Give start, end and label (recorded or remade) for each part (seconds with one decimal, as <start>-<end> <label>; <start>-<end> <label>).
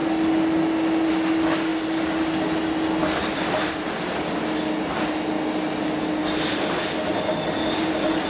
0.0-8.3 recorded